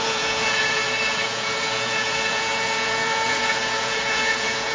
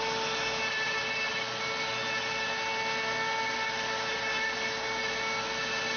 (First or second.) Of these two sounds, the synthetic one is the first